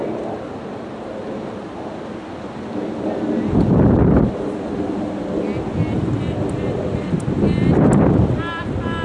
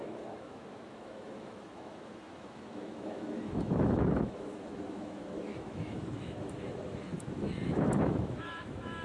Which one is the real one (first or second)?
first